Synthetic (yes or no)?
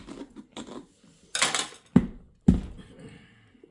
no